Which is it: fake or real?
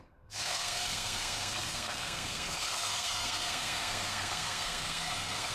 fake